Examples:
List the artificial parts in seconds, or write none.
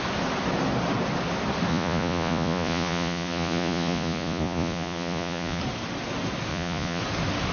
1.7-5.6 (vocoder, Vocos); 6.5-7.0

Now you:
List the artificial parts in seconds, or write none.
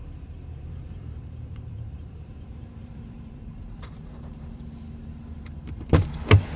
0.0-6.6 (vocoder, BigVGAN v2)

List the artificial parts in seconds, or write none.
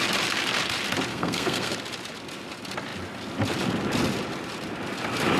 1.1-1.7 (codec, SNAC)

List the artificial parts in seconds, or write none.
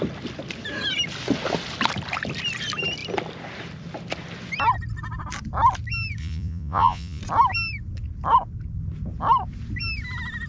6.2-7.2 (vocoder, Vocos)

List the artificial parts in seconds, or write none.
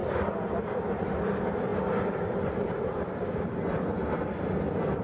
0.0-1.2 (vocoder, BigVGAN v2)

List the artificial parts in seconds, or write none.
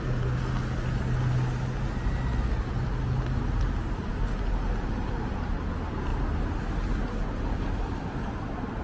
none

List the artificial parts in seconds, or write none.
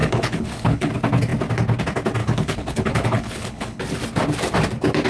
0.0-0.9 (codec, HILCodec); 2.2-3.8